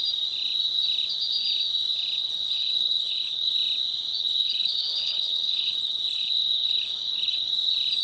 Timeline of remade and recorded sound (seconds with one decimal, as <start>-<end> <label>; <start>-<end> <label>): 0.0-2.2 recorded; 2.2-3.5 remade; 3.5-4.2 recorded; 4.2-7.5 remade; 7.5-8.0 recorded